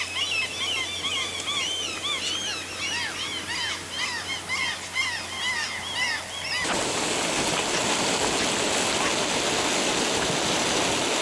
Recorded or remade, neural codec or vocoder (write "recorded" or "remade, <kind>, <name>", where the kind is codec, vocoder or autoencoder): recorded